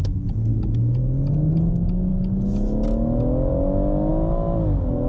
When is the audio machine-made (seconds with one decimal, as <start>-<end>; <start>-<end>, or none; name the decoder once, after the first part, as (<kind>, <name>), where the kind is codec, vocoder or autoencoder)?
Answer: none